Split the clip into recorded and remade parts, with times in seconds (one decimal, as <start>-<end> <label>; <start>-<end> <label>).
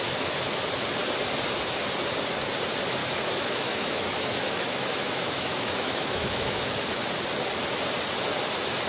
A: 0.0-3.0 recorded; 3.0-6.8 remade; 6.8-8.9 recorded